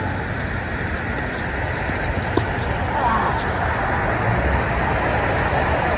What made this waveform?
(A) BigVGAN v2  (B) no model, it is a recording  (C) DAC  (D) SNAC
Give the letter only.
B